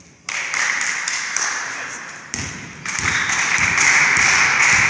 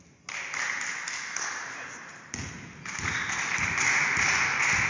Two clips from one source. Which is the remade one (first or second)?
first